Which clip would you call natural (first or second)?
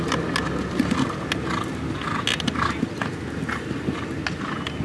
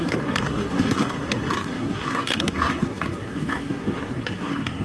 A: first